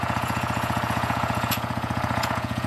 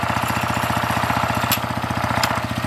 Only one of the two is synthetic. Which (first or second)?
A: first